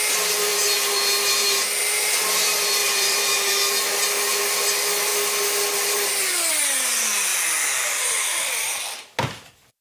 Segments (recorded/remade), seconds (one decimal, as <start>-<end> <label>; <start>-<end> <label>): 0.0-2.8 recorded; 2.8-3.5 remade; 3.5-9.8 recorded